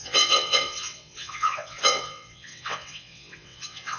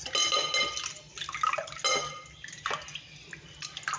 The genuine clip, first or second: second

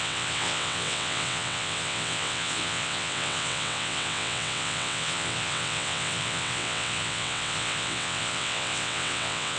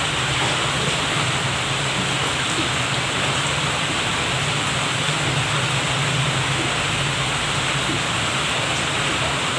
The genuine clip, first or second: second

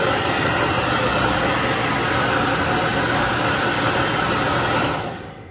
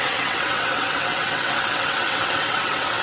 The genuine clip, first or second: first